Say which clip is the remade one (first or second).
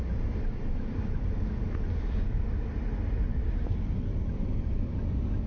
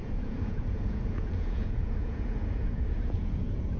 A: second